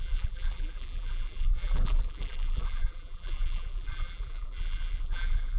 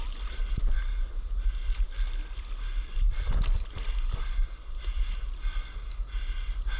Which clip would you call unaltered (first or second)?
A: second